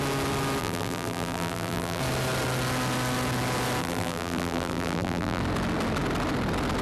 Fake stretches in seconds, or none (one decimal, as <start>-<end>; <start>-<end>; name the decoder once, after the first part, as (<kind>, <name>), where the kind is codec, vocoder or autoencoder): 0.6-2.0 (vocoder, BigVGAN v2); 3.8-5.4